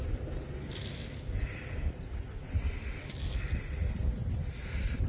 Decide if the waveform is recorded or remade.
recorded